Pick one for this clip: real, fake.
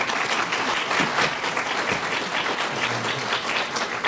real